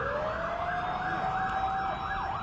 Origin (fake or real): real